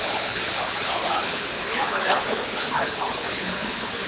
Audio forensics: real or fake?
fake